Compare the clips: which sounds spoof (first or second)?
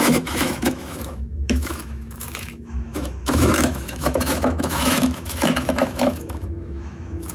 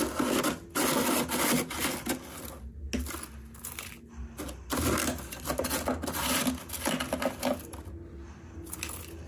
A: first